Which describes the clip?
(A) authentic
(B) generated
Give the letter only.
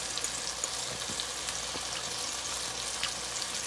A